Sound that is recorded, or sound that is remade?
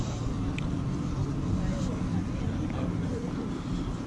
recorded